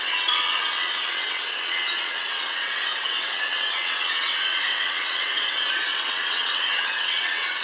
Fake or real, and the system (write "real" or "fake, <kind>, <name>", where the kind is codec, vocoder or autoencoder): fake, vocoder, WaveNeXt